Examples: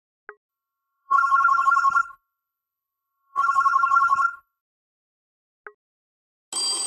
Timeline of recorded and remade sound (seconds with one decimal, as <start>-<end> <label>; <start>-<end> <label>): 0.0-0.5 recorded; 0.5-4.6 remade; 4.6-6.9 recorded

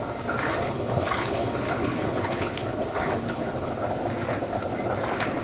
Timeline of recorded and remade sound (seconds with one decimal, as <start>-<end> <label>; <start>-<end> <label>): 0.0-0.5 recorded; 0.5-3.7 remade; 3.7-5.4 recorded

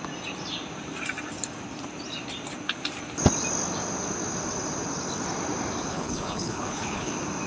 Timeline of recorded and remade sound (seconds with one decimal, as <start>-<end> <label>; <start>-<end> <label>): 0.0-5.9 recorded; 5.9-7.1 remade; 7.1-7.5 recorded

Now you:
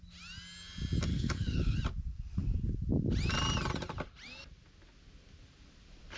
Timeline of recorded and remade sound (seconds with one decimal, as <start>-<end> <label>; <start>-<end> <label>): 0.0-1.1 recorded; 1.1-1.8 remade; 1.8-6.2 recorded